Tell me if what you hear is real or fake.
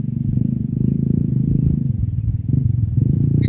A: fake